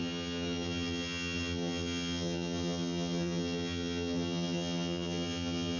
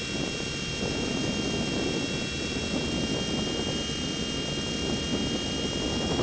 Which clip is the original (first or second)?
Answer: second